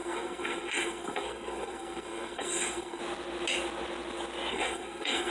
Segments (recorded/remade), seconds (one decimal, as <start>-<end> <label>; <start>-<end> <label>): 0.0-3.0 remade; 3.0-4.5 recorded; 4.5-5.3 remade